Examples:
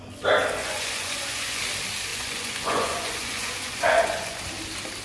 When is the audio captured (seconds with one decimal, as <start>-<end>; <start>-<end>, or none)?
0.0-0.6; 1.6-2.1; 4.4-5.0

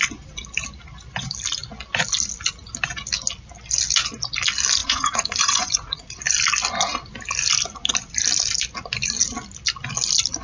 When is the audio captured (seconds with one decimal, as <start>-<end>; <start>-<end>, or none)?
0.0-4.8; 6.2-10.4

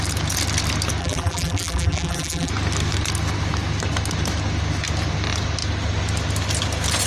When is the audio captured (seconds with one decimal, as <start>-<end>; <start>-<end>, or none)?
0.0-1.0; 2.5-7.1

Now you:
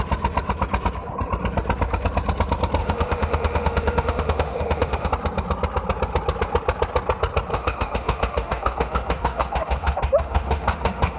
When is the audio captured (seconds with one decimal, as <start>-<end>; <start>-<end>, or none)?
0.0-2.8; 5.1-7.5

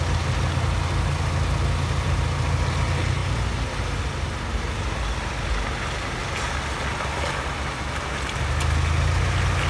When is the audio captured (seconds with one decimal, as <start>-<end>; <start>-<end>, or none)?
0.0-9.7

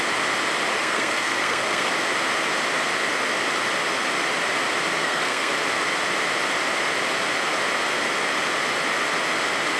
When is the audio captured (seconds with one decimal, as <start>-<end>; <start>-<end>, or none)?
0.0-0.8; 1.9-5.0; 5.5-9.8